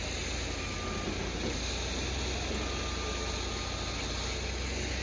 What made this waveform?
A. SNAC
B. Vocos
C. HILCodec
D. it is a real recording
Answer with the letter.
D